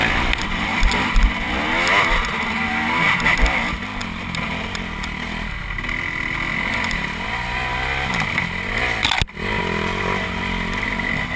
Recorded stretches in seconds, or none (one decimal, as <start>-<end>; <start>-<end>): 0.0-11.4